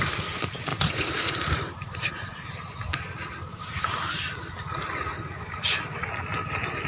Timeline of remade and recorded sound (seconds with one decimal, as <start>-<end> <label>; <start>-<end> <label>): 0.0-0.7 recorded; 0.7-2.4 remade; 2.4-3.5 recorded; 3.5-4.1 remade; 4.1-5.1 recorded; 5.1-5.8 remade; 5.8-6.9 recorded